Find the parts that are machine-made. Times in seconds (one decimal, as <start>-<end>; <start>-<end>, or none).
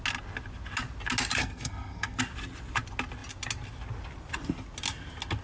1.4-2.2